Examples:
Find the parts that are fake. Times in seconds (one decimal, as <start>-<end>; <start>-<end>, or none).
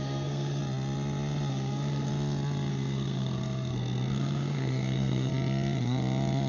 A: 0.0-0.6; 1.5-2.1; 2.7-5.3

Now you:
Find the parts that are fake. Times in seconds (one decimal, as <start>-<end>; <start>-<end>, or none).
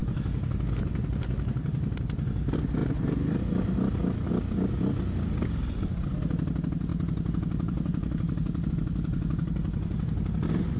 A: 2.8-3.4; 6.9-8.7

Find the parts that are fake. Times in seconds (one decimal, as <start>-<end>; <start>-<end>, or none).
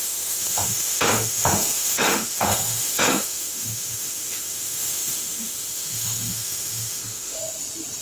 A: 0.0-7.4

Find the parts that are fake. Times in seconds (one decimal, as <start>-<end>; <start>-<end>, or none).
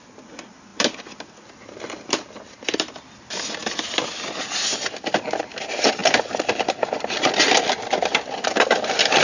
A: none